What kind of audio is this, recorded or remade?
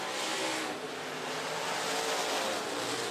recorded